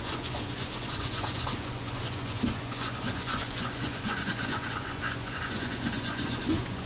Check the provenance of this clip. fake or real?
fake